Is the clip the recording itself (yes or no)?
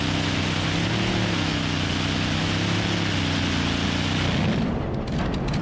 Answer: yes